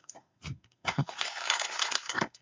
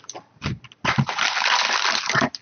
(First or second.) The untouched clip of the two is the second